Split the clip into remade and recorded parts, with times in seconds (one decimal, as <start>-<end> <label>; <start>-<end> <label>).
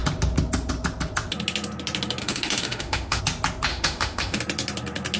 0.0-2.2 recorded; 2.2-3.2 remade; 3.2-3.7 recorded; 3.7-4.4 remade; 4.4-5.2 recorded